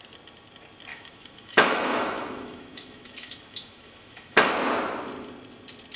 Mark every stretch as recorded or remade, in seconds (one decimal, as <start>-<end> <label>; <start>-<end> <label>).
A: 0.0-0.9 recorded; 0.9-4.5 remade; 4.5-6.0 recorded